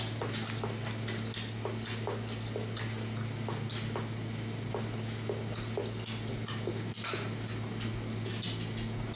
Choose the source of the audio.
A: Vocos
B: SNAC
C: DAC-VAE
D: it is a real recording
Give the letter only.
D